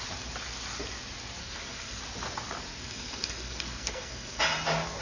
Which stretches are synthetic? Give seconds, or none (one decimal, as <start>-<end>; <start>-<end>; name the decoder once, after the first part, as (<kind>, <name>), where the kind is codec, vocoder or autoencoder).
1.4-2.0 (codec, SNAC); 2.7-4.4